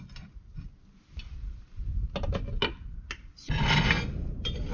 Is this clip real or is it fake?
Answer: real